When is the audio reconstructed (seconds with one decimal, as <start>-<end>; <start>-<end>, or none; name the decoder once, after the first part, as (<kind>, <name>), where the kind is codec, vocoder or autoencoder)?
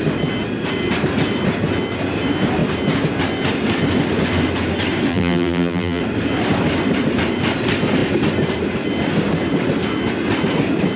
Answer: 5.1-6.0 (vocoder, BigVGAN v2)